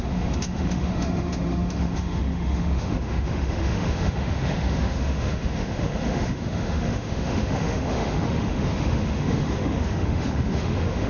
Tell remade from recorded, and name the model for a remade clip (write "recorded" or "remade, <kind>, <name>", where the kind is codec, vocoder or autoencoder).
remade, autoencoder, DAC-VAE